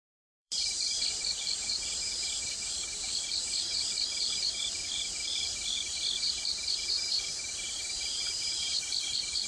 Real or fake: fake